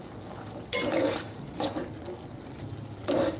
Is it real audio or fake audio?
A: real